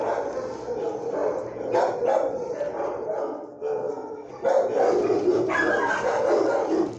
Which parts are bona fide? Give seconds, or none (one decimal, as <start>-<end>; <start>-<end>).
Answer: 0.0-3.2; 4.3-7.0